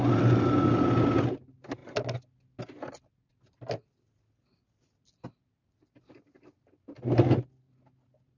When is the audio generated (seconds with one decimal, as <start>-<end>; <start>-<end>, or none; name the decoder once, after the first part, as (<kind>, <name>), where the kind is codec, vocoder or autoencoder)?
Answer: none